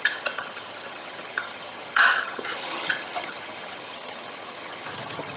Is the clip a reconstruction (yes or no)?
yes